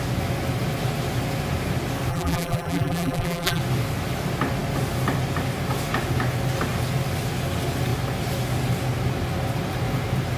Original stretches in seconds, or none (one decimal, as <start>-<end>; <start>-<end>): 0.0-2.1; 3.6-10.4